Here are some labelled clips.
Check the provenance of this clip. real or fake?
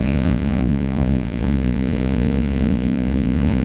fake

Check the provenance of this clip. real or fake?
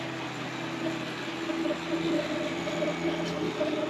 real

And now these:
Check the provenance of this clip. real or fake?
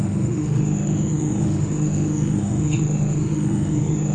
fake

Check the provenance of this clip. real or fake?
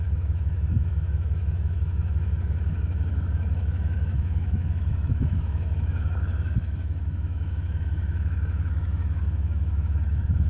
fake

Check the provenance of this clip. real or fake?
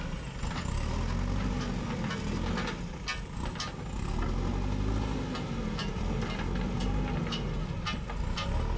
real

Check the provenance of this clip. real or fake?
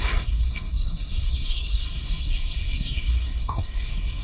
fake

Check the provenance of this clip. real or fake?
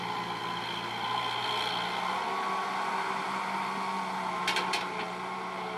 real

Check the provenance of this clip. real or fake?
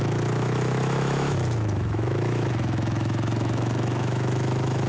fake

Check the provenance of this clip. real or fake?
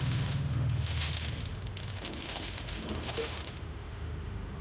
fake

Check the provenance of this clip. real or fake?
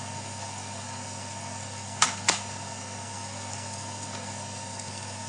fake